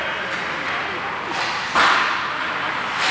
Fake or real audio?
real